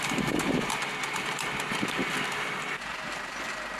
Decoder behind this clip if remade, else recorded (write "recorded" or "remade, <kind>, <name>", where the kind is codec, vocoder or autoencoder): remade, vocoder, BigVGAN v2